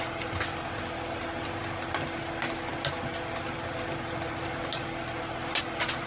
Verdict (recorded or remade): recorded